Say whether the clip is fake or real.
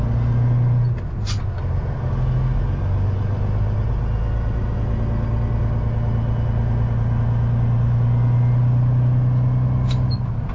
real